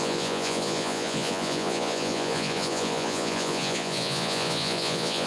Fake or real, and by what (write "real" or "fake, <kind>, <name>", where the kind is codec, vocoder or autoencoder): fake, vocoder, Vocos